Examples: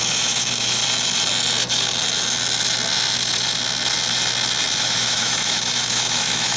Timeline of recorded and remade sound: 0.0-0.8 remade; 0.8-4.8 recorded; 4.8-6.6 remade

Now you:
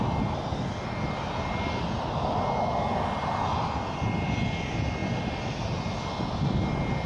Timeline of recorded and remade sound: 0.0-7.1 recorded

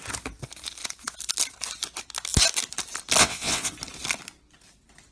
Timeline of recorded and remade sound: 0.0-3.2 recorded; 3.2-3.7 remade; 3.7-5.1 recorded

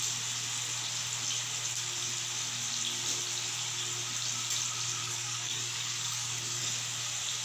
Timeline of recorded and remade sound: 0.0-5.0 recorded; 5.0-6.6 remade; 6.6-7.4 recorded

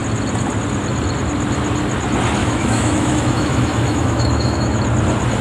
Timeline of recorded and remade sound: 0.0-2.4 recorded; 2.4-4.8 remade; 4.8-5.4 recorded

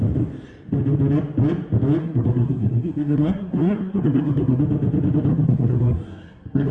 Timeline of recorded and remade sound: 0.0-2.0 recorded; 2.0-4.6 remade; 4.6-5.3 recorded; 5.3-6.7 remade

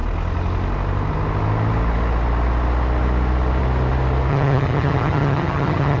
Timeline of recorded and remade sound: 0.0-4.3 recorded; 4.3-6.0 remade